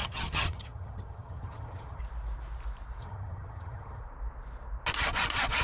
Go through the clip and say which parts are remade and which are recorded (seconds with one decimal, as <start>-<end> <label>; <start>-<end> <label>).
0.0-2.0 remade; 2.0-3.0 recorded; 3.0-4.0 remade; 4.0-5.6 recorded